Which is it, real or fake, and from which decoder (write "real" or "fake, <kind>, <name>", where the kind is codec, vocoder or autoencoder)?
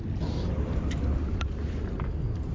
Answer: real